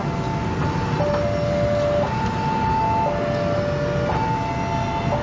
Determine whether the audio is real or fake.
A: real